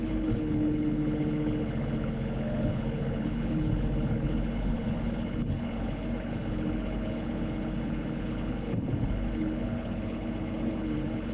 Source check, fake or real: fake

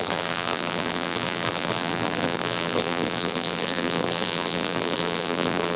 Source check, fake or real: fake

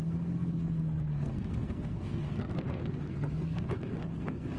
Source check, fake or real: fake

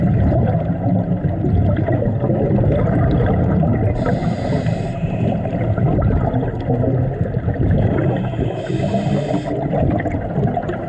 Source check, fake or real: real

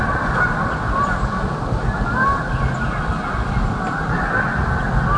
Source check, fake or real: real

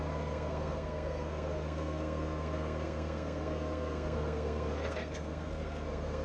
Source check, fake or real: fake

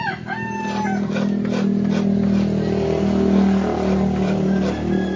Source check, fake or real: real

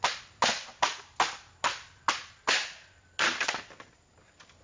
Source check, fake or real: real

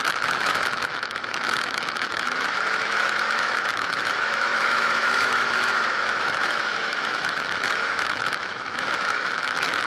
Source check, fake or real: fake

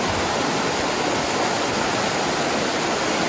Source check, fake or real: real